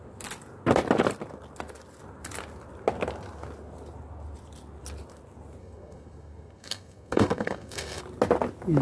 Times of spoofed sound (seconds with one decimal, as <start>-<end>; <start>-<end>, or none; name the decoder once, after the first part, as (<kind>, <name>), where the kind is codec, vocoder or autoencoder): 5.6-8.0 (codec, SNAC)

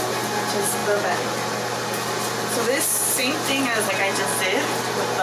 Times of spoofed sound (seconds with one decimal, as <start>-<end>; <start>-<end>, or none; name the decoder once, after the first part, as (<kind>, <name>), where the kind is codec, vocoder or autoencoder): none

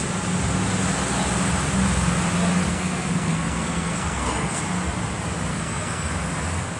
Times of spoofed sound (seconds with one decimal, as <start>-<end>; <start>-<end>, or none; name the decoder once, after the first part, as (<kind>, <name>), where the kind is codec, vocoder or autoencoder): 2.6-4.6 (codec, SNAC); 5.5-6.1